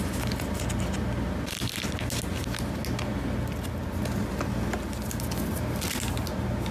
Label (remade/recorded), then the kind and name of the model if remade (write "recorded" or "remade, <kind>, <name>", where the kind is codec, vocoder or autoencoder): recorded